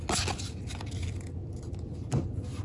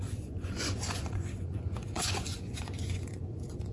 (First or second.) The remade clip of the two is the second